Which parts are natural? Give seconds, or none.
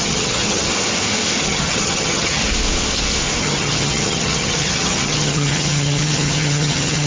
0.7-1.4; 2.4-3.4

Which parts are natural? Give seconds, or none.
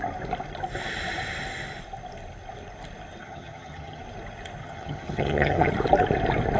0.0-3.2; 4.0-4.6; 5.7-6.6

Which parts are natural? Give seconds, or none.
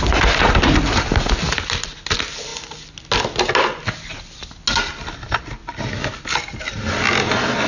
0.0-7.7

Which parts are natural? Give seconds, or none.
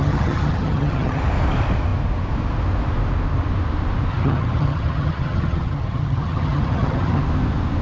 1.2-4.1; 7.2-7.8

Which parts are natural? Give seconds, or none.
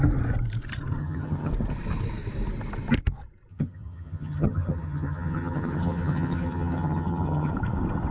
0.0-1.0; 1.5-3.5; 7.5-8.1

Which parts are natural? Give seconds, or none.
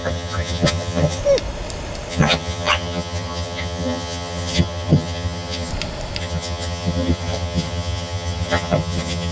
1.2-2.1; 5.7-6.2